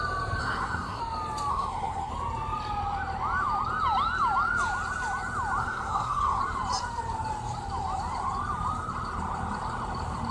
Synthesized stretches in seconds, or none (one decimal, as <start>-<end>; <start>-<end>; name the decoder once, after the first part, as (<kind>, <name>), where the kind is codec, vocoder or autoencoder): 0.4-1.0 (codec, SNAC); 1.5-2.1; 5.6-6.4